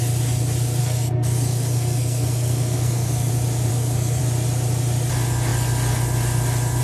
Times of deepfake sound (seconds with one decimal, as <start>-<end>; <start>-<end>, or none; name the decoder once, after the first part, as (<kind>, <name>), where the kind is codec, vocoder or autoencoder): 0.8-3.3 (codec, SNAC); 3.7-4.2